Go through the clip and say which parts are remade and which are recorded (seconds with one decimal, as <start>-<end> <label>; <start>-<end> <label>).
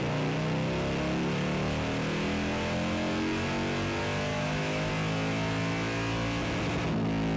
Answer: 0.0-4.3 recorded; 4.3-4.9 remade; 4.9-7.4 recorded